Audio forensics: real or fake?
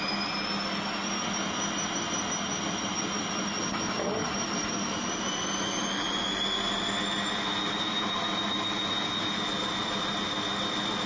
real